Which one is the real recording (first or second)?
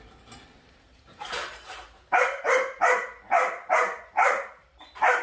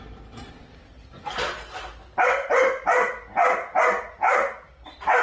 second